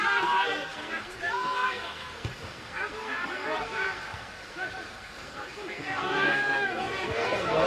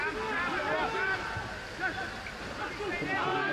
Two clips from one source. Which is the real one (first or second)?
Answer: second